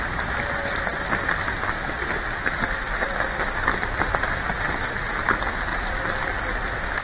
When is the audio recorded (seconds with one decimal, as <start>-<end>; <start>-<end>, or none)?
0.0-5.7; 6.4-7.0